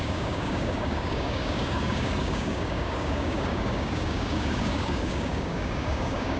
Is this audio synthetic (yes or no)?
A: yes